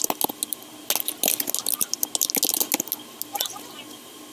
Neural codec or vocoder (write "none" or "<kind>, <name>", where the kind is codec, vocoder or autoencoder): none